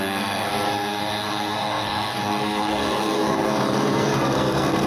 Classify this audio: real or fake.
fake